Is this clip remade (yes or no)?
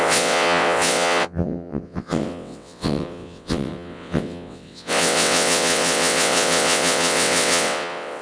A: yes